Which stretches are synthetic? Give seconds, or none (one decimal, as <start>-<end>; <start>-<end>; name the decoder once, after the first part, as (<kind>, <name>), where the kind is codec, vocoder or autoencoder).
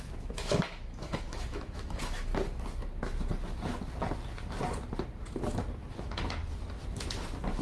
0.0-2.3 (autoencoder, DAC-VAE); 5.8-6.4